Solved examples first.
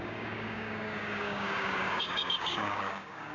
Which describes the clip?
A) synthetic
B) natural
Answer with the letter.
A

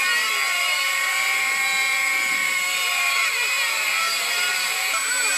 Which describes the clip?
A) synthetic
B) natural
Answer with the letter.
B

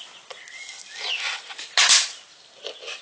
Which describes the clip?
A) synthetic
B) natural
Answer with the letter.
B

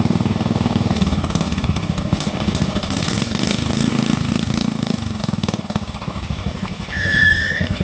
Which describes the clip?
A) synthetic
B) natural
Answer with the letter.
A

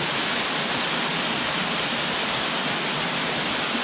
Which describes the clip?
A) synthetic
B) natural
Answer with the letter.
B